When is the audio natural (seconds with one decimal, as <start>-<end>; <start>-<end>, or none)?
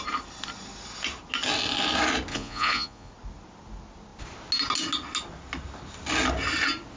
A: 0.0-2.3; 3.1-7.0